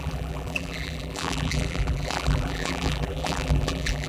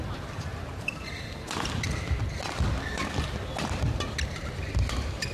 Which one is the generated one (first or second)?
first